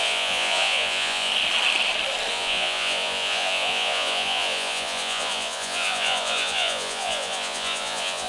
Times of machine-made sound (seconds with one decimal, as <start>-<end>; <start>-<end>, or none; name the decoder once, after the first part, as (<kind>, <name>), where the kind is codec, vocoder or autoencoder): 0.0-1.3 (vocoder, Vocos); 2.3-8.3